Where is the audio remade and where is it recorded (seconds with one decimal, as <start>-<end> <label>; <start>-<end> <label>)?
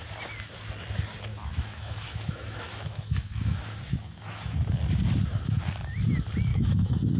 0.0-1.3 recorded; 1.3-4.5 remade; 4.5-6.5 recorded; 6.5-7.2 remade